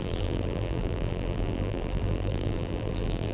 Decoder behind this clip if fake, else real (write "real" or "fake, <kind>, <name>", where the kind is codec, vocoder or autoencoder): fake, vocoder, BigVGAN v2